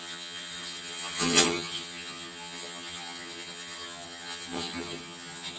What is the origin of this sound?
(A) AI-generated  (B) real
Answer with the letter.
A